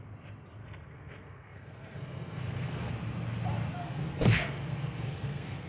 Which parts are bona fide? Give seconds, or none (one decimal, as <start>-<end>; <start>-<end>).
0.0-0.6; 2.9-3.8